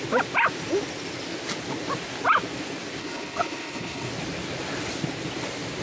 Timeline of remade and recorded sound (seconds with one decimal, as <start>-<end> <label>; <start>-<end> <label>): 0.0-3.0 recorded; 3.0-4.1 remade; 4.1-5.8 recorded